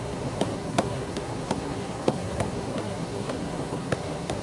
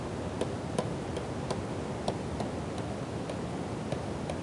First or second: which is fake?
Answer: first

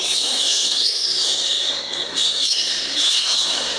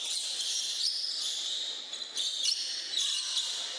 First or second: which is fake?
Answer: first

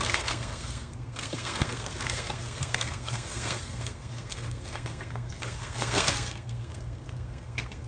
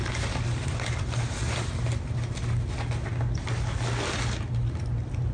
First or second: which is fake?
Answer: first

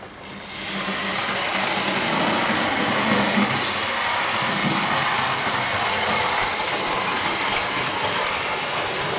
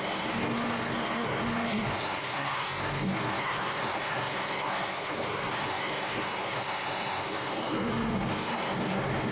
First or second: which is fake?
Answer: second